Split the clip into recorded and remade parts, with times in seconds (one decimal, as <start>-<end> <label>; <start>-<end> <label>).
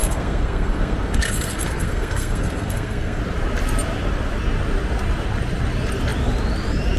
0.0-3.2 remade; 3.2-7.0 recorded